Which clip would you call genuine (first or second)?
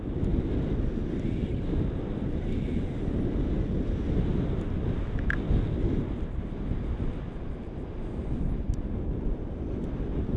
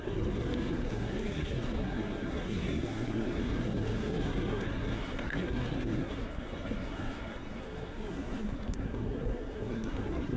first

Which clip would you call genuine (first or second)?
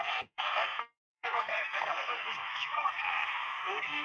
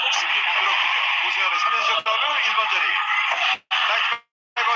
second